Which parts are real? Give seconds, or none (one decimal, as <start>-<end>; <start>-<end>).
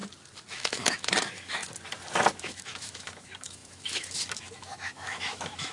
0.0-0.5; 1.6-2.3